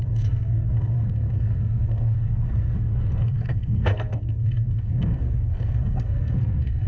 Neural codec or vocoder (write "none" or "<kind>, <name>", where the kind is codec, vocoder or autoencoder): codec, SNAC